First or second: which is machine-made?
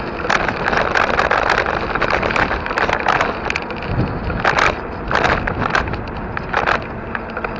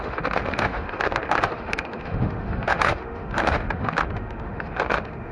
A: second